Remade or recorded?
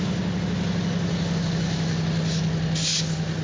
recorded